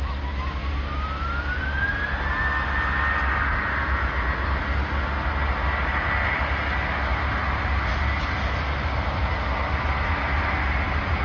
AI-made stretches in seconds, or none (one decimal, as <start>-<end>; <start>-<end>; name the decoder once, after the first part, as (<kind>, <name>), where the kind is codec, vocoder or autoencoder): none